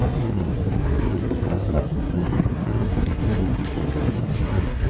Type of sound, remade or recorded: remade